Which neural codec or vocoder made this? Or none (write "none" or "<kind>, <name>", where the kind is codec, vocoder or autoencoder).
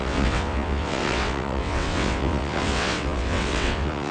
vocoder, WaveNeXt